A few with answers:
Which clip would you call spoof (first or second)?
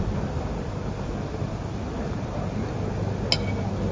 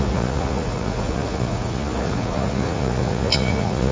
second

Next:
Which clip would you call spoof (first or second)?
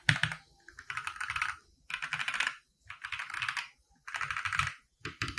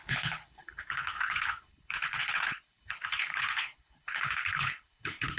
second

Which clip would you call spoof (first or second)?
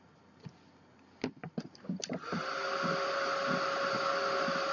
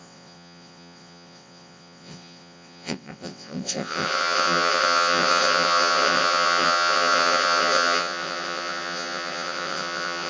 second